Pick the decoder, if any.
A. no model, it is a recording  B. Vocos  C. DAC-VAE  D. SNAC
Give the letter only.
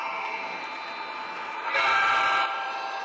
A